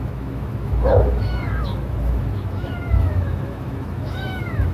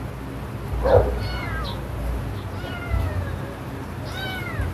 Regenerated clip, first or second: first